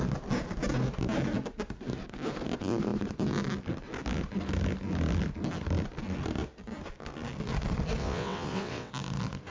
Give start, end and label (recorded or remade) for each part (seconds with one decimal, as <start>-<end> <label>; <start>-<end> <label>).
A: 0.0-8.0 recorded; 8.0-8.9 remade; 8.9-9.5 recorded